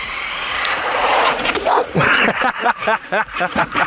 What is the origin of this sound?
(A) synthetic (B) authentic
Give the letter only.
A